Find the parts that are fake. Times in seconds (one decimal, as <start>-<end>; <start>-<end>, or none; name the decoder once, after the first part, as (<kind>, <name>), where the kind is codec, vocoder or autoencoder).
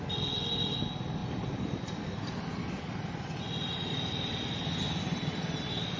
none